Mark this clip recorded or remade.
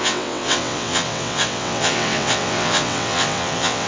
remade